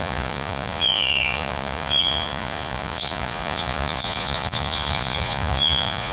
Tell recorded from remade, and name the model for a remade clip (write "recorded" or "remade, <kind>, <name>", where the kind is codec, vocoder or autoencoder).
remade, vocoder, Vocos